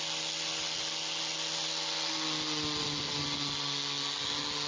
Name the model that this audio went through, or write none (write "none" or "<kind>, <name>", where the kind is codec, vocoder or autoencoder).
none